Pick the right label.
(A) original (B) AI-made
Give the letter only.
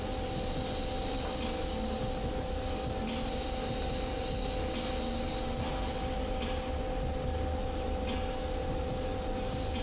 A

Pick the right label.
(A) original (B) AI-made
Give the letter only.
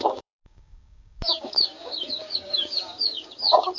B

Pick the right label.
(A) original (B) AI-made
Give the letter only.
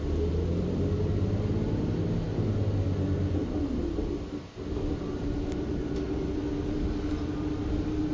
A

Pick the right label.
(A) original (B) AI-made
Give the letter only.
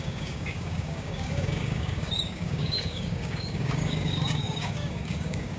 B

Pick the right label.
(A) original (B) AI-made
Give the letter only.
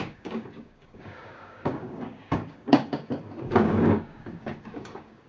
B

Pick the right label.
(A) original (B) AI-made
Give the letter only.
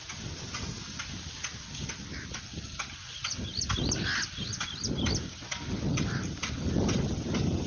A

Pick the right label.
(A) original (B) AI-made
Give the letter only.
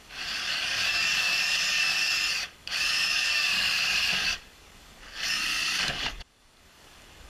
B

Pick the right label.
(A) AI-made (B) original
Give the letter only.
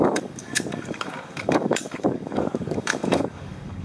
A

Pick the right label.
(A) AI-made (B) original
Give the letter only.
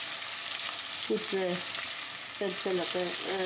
B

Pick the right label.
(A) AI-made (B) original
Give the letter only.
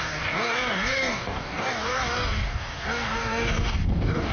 A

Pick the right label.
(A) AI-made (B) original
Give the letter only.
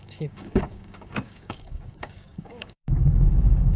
A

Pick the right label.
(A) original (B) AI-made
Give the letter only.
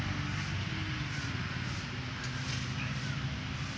A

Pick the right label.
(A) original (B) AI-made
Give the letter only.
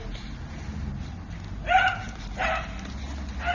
A